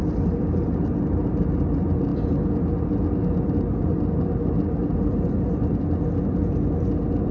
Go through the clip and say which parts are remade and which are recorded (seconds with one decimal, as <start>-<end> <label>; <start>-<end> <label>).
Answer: 0.0-7.3 recorded